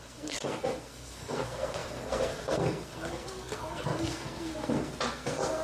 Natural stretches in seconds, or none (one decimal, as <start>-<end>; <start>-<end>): none